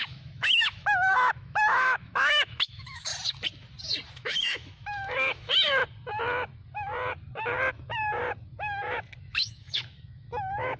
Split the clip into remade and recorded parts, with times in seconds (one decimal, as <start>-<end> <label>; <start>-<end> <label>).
0.0-3.1 remade; 3.1-4.1 recorded; 4.1-5.8 remade; 5.8-7.7 recorded; 7.7-8.2 remade; 8.2-9.2 recorded; 9.2-10.8 remade